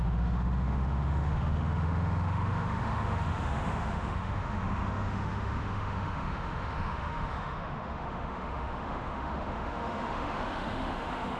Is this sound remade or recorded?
remade